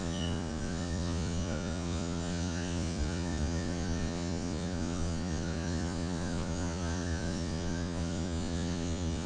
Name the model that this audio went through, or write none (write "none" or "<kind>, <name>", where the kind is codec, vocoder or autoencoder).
vocoder, Vocos